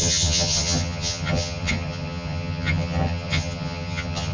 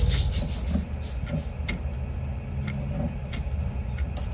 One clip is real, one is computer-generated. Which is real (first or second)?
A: second